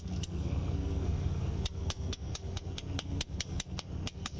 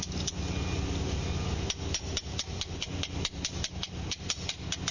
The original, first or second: second